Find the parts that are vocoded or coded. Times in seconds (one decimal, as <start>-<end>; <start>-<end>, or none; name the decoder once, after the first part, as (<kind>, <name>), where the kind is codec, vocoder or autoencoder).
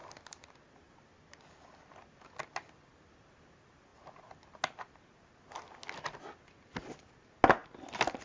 none